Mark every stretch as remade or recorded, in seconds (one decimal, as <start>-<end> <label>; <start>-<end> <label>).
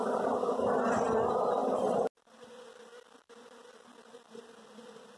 0.0-5.2 recorded